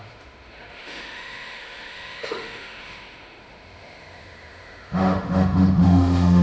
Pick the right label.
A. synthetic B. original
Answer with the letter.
A